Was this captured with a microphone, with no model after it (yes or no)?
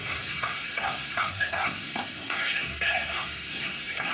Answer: no